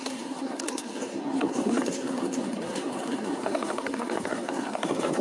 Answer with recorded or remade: remade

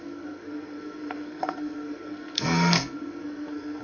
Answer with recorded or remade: remade